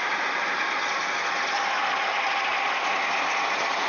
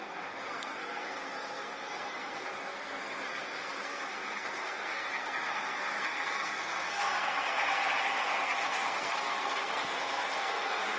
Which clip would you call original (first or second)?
first